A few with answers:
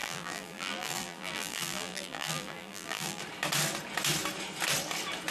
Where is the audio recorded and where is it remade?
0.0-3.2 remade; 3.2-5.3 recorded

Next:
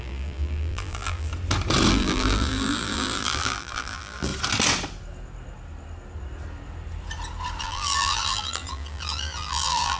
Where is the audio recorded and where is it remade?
0.0-1.3 remade; 1.3-1.9 recorded; 1.9-4.3 remade; 4.3-7.6 recorded; 7.6-10.0 remade